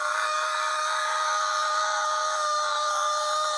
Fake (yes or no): yes